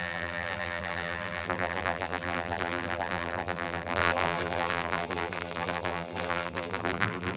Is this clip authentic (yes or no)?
no